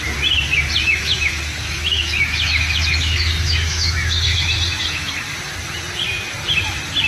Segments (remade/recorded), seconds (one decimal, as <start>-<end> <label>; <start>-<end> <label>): 0.0-0.8 recorded; 0.8-5.1 remade; 5.1-7.1 recorded